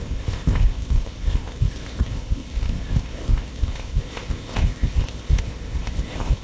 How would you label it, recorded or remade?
remade